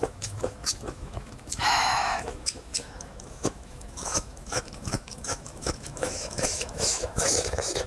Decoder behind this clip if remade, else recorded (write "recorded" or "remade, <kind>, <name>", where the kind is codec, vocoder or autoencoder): remade, autoencoder, DAC-VAE